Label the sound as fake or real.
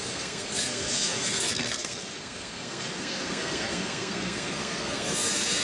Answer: fake